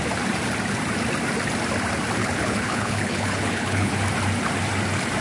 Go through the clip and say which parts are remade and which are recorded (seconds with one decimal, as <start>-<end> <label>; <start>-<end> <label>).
0.0-2.2 recorded; 2.2-3.9 remade; 3.9-5.2 recorded

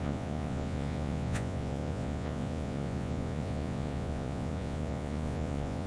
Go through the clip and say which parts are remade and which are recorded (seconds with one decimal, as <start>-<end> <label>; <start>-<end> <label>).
0.0-5.9 remade

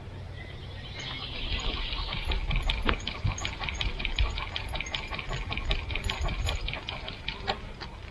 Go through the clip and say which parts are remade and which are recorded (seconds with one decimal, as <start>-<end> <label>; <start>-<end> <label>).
0.0-8.1 recorded